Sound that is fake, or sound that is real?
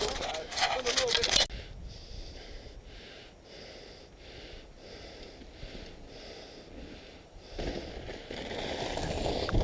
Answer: real